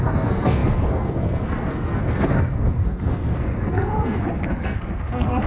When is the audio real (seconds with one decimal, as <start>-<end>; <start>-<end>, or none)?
none